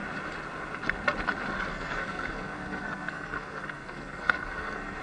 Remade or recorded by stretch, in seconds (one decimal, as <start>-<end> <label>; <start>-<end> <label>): 0.0-1.7 recorded; 1.7-5.0 remade